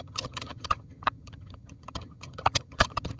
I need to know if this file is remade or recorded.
remade